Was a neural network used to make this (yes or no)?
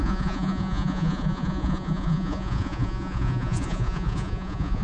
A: yes